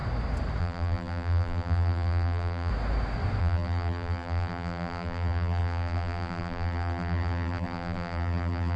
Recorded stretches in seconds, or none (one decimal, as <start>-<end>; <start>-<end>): 0.0-0.6; 2.7-3.4